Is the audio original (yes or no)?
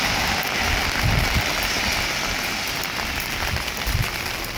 yes